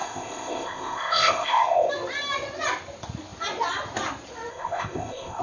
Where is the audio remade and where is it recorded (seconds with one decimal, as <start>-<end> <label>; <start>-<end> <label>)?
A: 0.0-1.9 remade; 1.9-4.5 recorded; 4.5-5.4 remade